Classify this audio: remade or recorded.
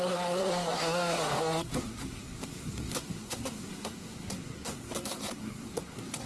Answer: remade